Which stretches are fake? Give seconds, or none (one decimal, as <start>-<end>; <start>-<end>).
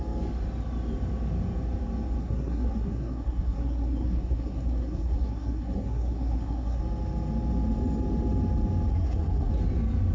2.2-6.8; 8.9-9.5